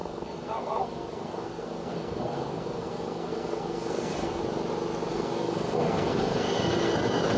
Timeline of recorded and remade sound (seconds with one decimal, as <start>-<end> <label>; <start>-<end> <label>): 0.0-4.4 remade; 4.4-5.1 recorded; 5.1-6.9 remade; 6.9-7.4 recorded